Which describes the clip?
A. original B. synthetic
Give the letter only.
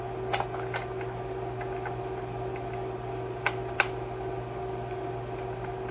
A